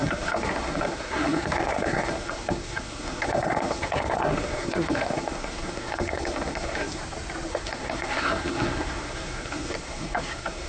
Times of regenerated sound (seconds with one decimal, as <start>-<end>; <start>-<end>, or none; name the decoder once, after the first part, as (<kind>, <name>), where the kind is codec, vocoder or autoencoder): 0.0-7.0 (codec, SNAC); 7.5-10.7